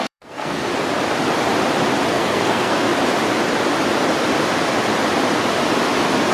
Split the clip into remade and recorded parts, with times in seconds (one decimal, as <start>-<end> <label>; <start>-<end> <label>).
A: 0.0-0.7 remade; 0.7-2.1 recorded; 2.1-2.9 remade; 2.9-6.3 recorded